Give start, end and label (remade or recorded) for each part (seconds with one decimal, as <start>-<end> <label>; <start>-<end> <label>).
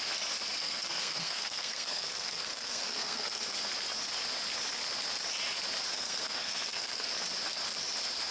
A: 0.0-0.6 recorded; 0.6-3.4 remade; 3.4-5.9 recorded; 5.9-7.1 remade; 7.1-8.3 recorded